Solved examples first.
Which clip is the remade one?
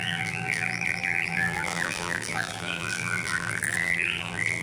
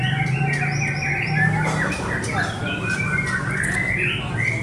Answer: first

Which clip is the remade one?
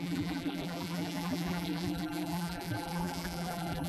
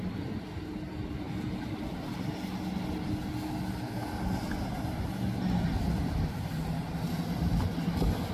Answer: first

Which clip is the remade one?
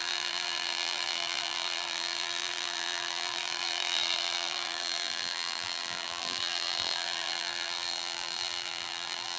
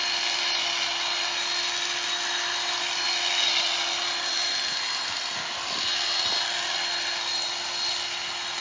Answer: first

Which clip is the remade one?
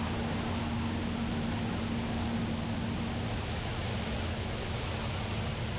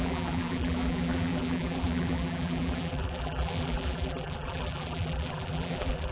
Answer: second